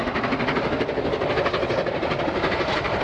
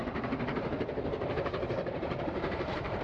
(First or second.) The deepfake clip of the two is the second